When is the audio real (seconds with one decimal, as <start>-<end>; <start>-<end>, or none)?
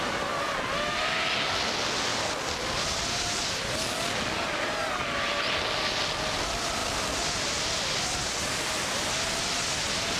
0.0-2.1; 3.7-6.8; 8.0-10.2